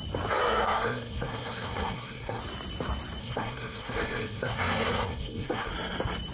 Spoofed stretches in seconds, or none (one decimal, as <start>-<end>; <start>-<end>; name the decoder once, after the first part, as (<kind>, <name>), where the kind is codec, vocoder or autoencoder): 0.4-2.4 (codec, SNAC); 3.2-5.7